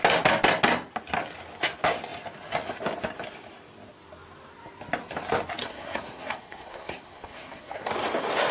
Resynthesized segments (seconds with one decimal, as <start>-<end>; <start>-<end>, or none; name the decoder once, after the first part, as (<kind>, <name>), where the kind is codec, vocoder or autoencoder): 5.6-7.9 (codec, SNAC)